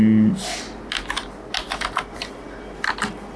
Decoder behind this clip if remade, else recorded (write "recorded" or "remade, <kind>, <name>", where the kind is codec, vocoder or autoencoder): recorded